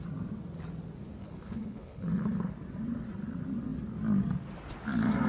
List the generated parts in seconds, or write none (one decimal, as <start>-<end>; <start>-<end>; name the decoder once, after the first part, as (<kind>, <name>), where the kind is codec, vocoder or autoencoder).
1.2-2.5 (codec, HILCodec)